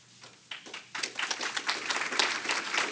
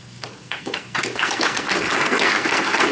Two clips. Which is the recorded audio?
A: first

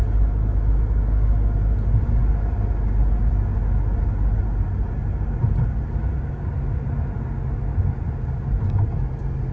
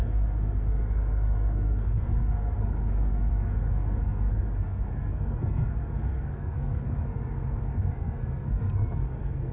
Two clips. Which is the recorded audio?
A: first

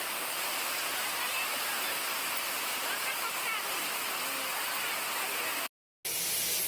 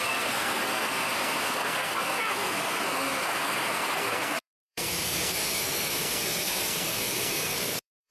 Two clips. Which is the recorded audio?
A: first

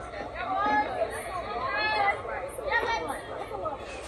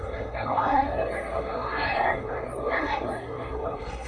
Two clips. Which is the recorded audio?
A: first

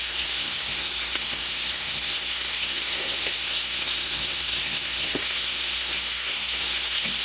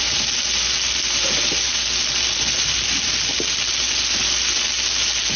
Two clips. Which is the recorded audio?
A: second